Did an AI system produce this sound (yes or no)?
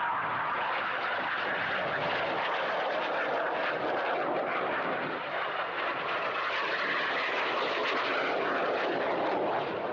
no